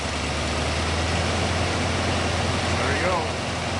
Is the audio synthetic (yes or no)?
no